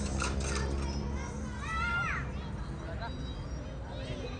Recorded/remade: recorded